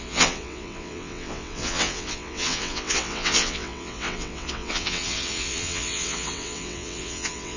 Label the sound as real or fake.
fake